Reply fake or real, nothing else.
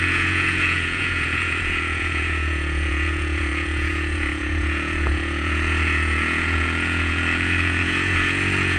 fake